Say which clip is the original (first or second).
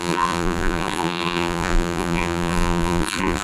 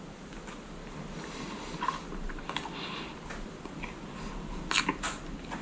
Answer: second